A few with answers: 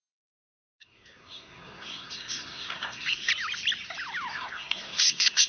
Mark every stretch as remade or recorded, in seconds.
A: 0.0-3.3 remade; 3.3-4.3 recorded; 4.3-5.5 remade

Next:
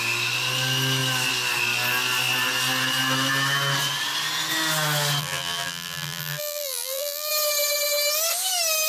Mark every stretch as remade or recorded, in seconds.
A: 0.0-5.2 recorded; 5.2-7.3 remade; 7.3-8.9 recorded

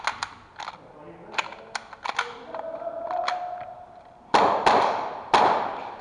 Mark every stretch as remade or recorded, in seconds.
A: 0.0-6.0 recorded

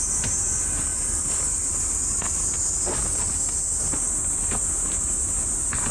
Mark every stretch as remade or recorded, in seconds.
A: 0.0-5.9 recorded

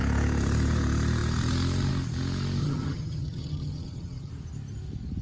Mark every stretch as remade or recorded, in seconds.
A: 0.0-2.6 recorded; 2.6-4.3 remade; 4.3-5.2 recorded

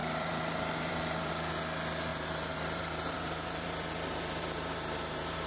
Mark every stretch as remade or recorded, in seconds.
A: 0.0-1.3 remade; 1.3-2.1 recorded; 2.1-5.5 remade

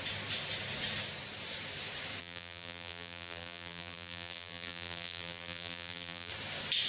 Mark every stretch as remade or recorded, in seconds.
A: 0.0-2.2 recorded; 2.2-6.3 remade; 6.3-6.9 recorded